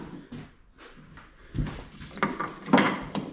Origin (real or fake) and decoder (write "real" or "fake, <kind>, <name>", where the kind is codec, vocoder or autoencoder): real